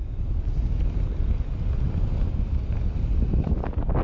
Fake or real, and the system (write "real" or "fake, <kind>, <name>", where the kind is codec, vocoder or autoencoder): real